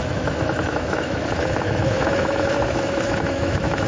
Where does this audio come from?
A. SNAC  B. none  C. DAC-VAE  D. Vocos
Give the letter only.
C